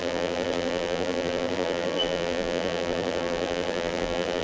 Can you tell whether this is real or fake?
fake